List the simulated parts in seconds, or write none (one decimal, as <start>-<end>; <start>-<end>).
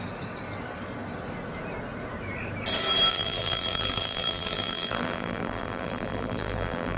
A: 3.1-7.0